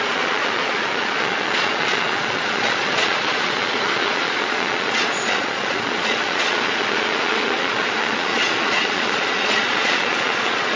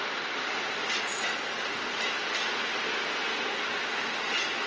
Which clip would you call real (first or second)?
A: second